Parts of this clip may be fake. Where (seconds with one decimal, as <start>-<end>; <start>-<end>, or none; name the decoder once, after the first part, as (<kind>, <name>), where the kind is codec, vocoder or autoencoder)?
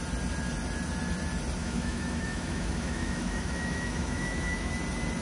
1.6-4.7 (autoencoder, DAC-VAE)